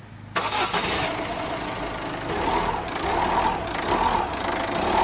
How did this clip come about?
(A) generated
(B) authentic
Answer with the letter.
B